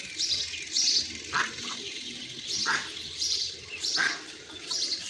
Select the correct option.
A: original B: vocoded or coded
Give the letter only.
B